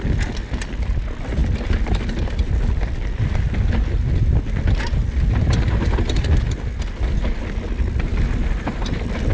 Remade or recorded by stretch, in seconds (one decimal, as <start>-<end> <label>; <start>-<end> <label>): 0.0-9.3 recorded